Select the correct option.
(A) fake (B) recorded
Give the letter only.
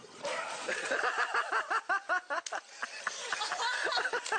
B